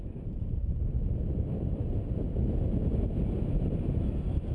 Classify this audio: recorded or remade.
recorded